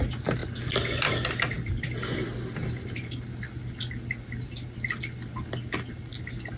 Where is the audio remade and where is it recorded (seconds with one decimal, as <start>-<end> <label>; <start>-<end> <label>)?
0.0-6.6 recorded